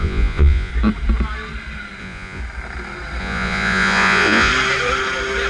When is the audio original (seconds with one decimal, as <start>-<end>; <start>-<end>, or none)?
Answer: 0.7-2.0; 2.4-3.2; 4.5-5.5